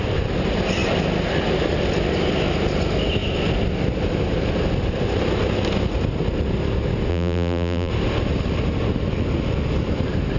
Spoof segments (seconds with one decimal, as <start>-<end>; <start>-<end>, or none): 7.1-7.9